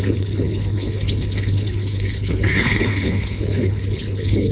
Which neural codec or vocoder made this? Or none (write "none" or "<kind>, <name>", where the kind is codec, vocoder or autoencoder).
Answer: codec, HILCodec